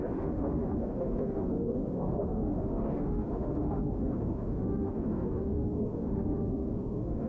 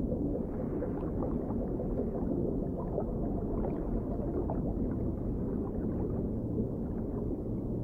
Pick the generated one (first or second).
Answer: first